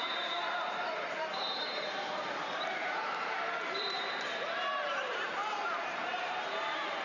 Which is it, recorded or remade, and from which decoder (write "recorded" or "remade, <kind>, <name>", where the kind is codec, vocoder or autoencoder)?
remade, vocoder, BigVGAN v2